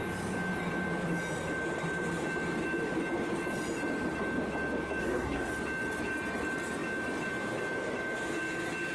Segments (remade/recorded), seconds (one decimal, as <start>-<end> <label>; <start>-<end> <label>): 0.0-5.0 recorded; 5.0-5.5 remade; 5.5-8.9 recorded